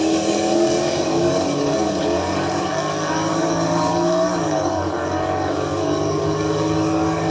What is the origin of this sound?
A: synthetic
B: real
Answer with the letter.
A